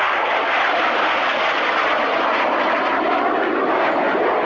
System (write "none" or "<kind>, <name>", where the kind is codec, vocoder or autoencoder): none